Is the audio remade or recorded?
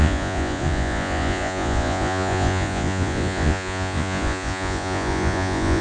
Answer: remade